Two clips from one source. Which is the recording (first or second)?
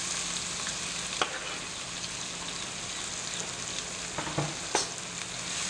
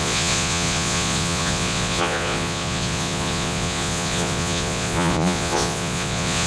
first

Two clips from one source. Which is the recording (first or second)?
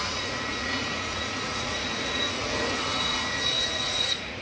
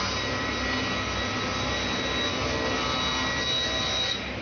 second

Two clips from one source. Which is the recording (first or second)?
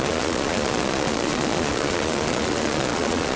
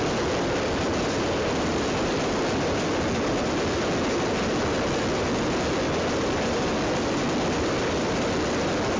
second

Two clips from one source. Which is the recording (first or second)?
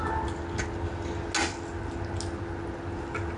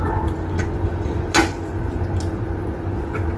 first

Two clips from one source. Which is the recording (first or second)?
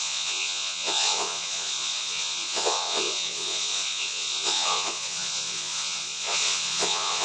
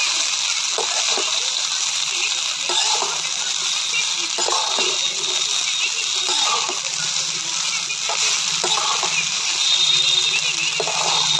second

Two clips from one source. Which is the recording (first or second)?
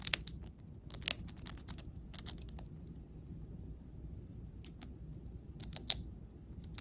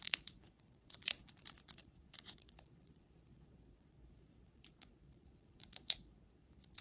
first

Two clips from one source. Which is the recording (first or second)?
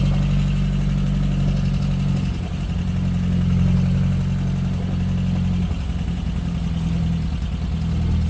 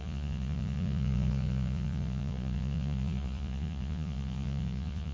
first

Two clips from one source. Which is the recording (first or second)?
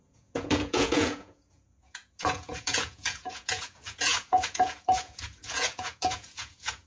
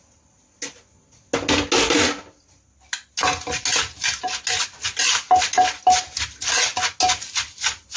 second